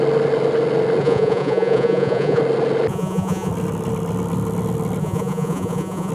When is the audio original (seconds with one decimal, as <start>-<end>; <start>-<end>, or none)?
0.0-1.0; 2.4-2.9; 3.5-5.0